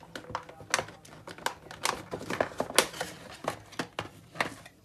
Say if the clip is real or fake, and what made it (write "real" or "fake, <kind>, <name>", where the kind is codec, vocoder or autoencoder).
real